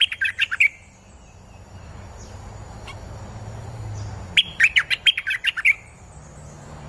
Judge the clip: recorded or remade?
remade